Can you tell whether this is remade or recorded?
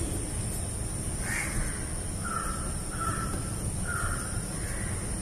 recorded